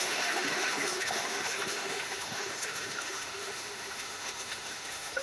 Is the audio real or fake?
fake